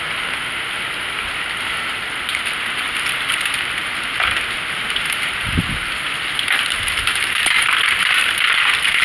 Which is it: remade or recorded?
recorded